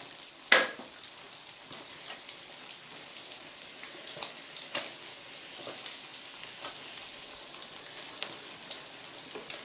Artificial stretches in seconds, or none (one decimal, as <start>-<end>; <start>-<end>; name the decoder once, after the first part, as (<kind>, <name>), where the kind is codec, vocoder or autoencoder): none